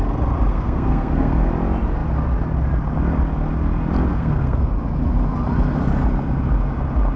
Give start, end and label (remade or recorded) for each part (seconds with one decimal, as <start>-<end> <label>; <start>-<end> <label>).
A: 0.0-0.5 recorded; 0.5-1.5 remade; 1.5-4.1 recorded; 4.1-4.7 remade; 4.7-7.2 recorded